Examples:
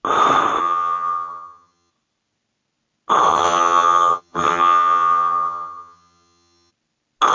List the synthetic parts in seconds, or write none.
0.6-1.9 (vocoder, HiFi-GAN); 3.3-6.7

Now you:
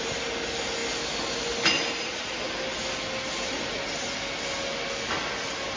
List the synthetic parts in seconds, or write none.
none

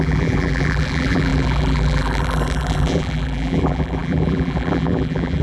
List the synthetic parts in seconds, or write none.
0.0-5.4 (vocoder, BigVGAN v2)

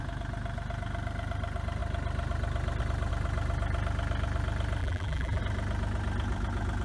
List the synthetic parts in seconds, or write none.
4.8-5.4 (vocoder, BigVGAN v2)